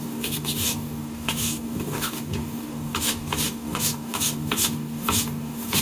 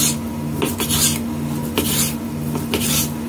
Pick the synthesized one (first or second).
first